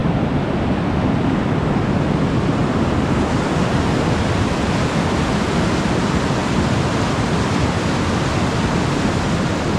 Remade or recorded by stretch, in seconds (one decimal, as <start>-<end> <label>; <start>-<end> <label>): 0.0-0.6 remade; 0.6-6.4 recorded; 6.4-8.2 remade; 8.2-9.8 recorded